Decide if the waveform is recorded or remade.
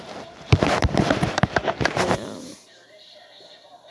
remade